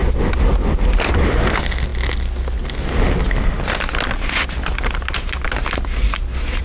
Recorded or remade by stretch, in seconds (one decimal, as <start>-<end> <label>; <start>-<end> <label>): 0.0-6.6 recorded